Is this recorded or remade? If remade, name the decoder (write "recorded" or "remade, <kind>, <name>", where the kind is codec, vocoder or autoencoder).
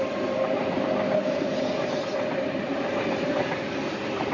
recorded